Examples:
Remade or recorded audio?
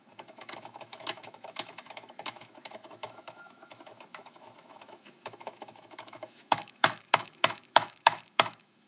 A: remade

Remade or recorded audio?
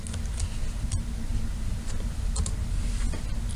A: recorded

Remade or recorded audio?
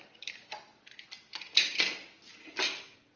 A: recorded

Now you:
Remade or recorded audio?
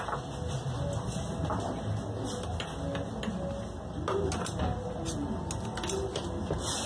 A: recorded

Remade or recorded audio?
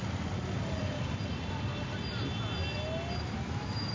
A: recorded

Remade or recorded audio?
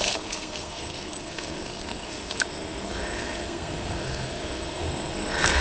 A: remade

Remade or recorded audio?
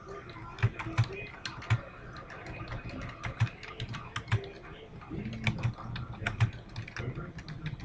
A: recorded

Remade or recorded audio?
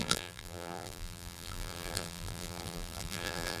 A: remade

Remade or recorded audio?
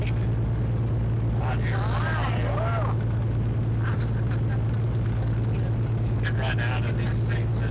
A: recorded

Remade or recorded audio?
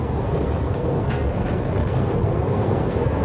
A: remade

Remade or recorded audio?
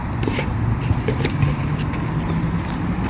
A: recorded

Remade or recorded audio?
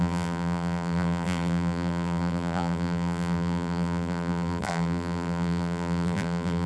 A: remade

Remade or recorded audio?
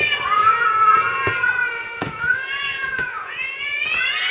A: remade